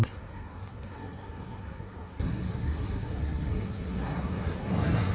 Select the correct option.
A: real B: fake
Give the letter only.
B